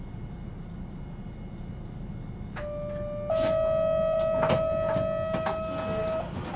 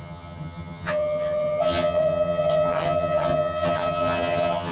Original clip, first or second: first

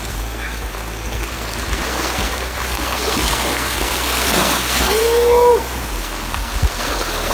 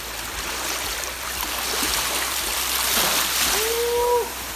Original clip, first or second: second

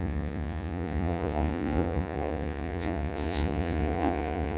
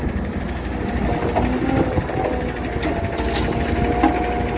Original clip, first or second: second